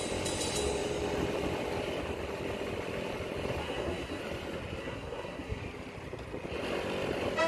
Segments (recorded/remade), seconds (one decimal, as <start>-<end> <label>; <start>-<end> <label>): 0.0-3.6 recorded; 3.6-4.2 remade; 4.2-4.8 recorded; 4.8-5.6 remade; 5.6-7.5 recorded